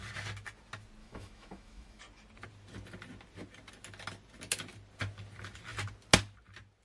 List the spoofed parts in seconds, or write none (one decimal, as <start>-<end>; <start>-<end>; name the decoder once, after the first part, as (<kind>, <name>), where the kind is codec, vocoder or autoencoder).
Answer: 1.0-2.0 (autoencoder, DAC-VAE)